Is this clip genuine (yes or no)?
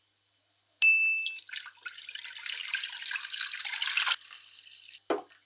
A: yes